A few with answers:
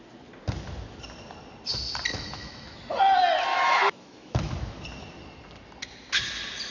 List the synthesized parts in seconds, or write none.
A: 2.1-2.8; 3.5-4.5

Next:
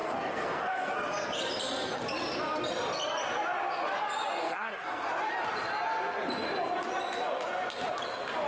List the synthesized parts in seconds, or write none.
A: 0.0-1.3; 4.4-5.1

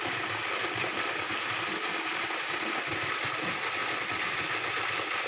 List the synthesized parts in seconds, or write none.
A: none

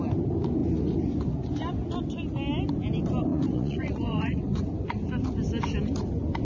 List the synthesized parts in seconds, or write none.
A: 3.3-4.6